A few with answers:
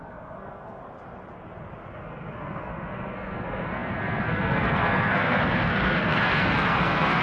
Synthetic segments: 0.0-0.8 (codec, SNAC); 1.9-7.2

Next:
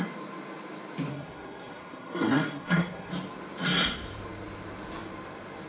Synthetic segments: 1.1-3.1 (codec, SNAC)